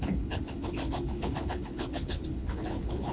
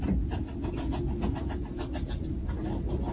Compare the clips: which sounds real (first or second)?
second